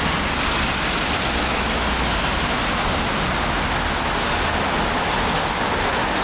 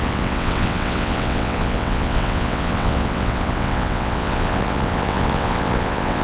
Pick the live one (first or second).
first